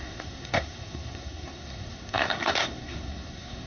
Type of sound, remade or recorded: remade